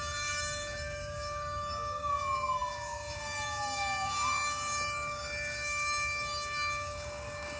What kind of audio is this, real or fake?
fake